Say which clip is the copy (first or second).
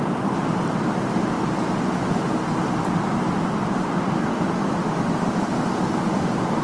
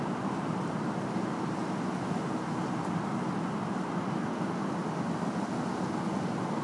first